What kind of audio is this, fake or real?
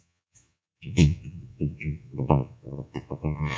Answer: fake